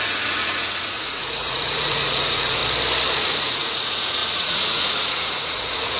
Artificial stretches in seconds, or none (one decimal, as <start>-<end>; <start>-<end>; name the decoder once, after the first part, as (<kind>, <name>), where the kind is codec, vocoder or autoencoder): 0.0-2.6 (vocoder, Vocos); 3.2-6.0